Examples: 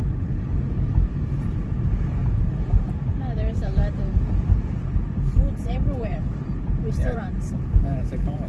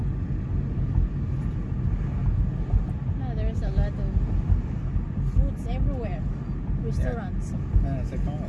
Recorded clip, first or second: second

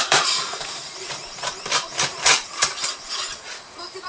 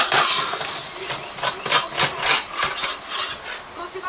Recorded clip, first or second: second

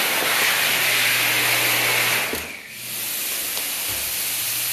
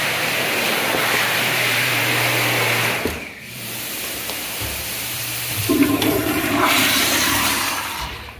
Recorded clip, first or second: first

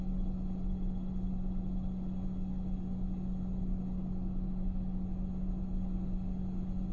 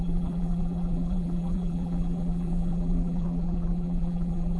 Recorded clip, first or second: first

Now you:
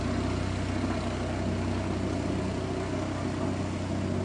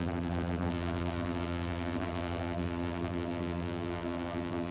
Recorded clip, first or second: first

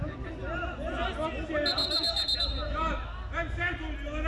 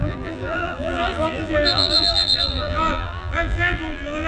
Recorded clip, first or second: first